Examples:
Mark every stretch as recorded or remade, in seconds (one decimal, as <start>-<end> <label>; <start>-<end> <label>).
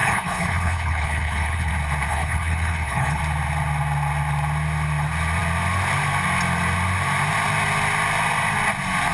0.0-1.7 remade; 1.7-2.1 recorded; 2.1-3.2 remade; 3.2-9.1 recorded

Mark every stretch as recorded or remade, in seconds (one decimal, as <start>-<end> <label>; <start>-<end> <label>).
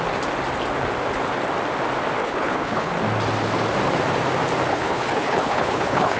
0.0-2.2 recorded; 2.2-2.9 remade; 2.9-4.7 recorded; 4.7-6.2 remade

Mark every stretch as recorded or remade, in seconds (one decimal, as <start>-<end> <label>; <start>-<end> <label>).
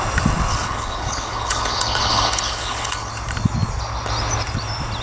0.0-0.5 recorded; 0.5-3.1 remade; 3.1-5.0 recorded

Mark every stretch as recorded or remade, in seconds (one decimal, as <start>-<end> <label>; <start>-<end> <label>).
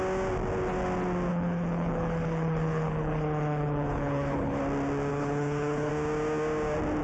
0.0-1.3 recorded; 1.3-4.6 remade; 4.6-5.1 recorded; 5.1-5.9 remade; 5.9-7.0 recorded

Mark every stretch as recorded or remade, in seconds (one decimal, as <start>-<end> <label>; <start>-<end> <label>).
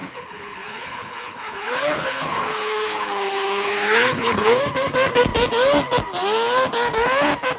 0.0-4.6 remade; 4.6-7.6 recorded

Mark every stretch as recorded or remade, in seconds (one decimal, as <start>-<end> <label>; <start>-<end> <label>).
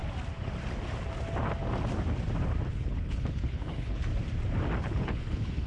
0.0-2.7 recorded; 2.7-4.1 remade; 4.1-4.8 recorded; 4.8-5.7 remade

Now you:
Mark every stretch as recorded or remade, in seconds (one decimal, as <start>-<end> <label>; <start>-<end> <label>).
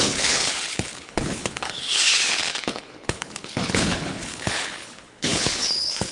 0.0-6.1 remade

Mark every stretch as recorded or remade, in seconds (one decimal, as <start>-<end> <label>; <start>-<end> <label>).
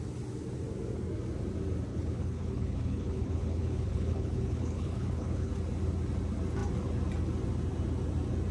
0.0-1.9 recorded; 1.9-5.5 remade; 5.5-8.5 recorded